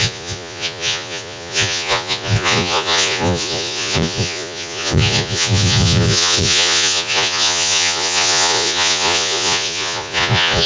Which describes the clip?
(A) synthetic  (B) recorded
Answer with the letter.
A